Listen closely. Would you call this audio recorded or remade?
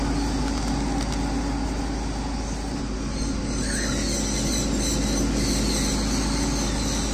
recorded